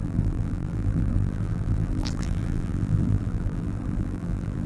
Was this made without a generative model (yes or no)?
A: no